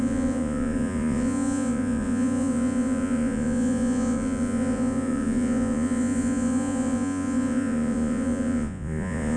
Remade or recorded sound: remade